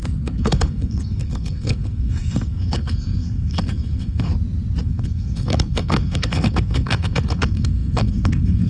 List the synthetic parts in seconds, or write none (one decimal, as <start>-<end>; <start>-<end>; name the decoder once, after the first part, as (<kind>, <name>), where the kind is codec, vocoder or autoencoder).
0.0-4.3 (codec, SNAC); 4.8-8.7